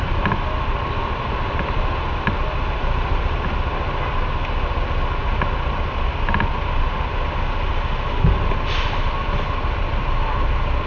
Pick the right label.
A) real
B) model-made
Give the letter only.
A